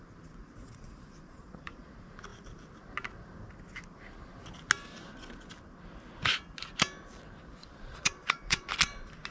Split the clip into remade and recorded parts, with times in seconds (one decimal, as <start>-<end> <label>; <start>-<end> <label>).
0.0-0.7 recorded; 0.7-1.9 remade; 1.9-7.6 recorded; 7.6-8.7 remade; 8.7-9.3 recorded

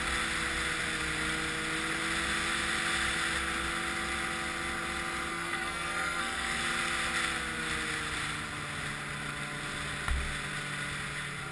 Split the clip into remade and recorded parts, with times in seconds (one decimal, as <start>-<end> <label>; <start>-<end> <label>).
0.0-5.3 recorded; 5.3-6.6 remade; 6.6-11.5 recorded

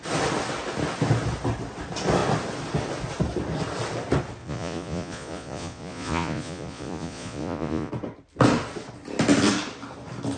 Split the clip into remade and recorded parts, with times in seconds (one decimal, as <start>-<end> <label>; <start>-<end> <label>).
0.0-4.4 recorded; 4.4-7.9 remade; 7.9-10.4 recorded

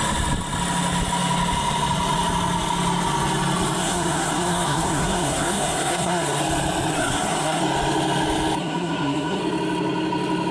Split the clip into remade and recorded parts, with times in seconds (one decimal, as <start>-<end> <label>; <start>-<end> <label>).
0.0-3.8 recorded; 3.8-6.4 remade; 6.4-6.9 recorded; 6.9-7.6 remade; 7.6-8.6 recorded; 8.6-9.4 remade; 9.4-10.5 recorded

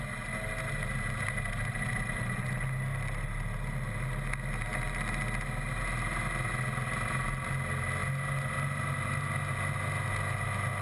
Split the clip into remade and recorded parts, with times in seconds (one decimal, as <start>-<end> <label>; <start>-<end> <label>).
0.0-10.8 recorded

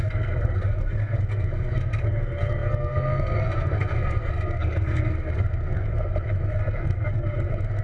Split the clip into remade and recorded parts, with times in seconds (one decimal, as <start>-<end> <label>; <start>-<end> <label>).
0.0-5.9 remade; 5.9-6.5 recorded; 6.5-7.8 remade

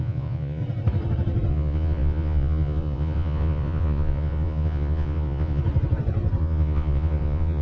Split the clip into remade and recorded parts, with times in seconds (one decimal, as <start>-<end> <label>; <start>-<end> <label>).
0.0-0.6 remade; 0.6-1.5 recorded; 1.5-5.6 remade; 5.6-6.4 recorded; 6.4-7.6 remade